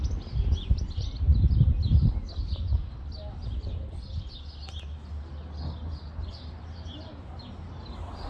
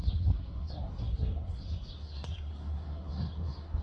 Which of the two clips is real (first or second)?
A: first